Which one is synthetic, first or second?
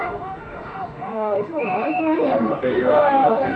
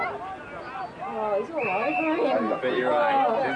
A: first